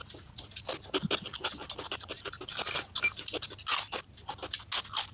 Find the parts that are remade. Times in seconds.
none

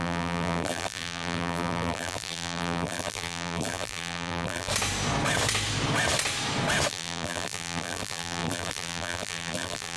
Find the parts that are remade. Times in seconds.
0.0-4.7; 6.9-10.0